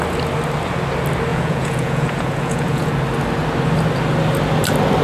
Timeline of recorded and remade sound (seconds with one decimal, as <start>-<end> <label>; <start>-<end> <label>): 0.0-1.3 recorded; 1.3-2.9 remade; 2.9-5.0 recorded